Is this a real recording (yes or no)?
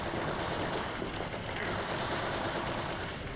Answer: yes